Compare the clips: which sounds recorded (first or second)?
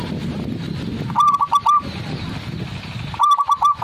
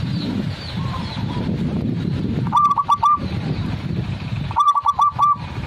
first